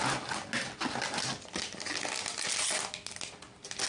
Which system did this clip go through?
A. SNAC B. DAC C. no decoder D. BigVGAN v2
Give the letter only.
C